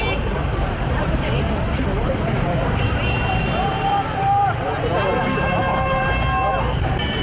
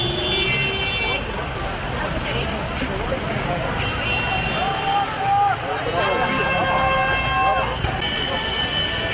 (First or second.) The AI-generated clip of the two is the first